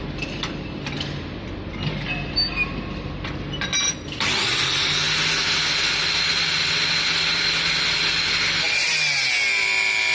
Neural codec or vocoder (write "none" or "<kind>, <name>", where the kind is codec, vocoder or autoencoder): none